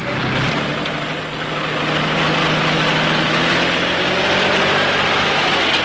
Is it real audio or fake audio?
real